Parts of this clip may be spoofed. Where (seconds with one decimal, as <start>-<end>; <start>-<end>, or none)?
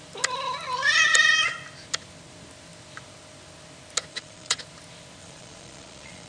4.1-4.6; 5.2-6.3